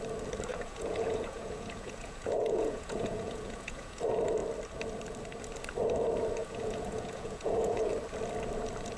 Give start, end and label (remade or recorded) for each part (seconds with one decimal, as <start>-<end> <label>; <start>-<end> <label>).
0.0-0.5 recorded; 0.5-4.0 remade; 4.0-6.4 recorded; 6.4-7.9 remade; 7.9-9.0 recorded